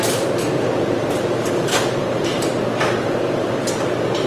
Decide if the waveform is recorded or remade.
remade